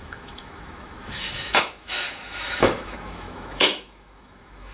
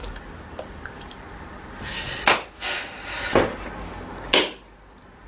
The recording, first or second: second